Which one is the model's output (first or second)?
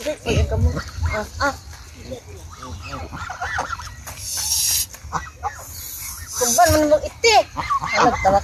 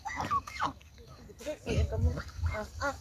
second